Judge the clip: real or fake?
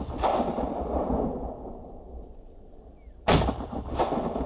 real